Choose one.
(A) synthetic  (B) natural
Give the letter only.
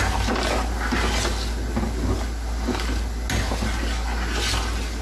B